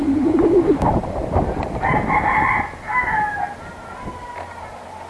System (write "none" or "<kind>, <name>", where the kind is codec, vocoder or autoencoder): none